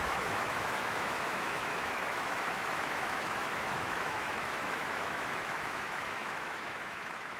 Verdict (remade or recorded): remade